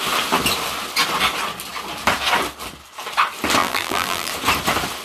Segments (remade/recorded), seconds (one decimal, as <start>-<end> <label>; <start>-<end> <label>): 0.0-3.6 recorded; 3.6-4.3 remade; 4.3-5.0 recorded